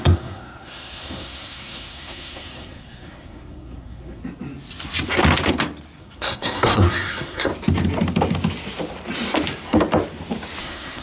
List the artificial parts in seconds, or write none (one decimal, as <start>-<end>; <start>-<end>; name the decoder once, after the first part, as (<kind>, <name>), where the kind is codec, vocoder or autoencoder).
0.0-4.2 (codec, SNAC); 6.0-7.5; 10.6-11.0